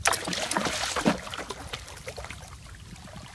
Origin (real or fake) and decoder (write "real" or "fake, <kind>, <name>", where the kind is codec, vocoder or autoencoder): real